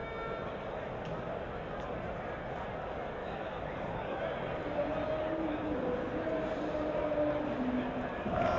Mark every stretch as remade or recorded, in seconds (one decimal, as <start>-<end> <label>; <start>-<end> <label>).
0.0-3.2 recorded; 3.2-4.2 remade; 4.2-8.6 recorded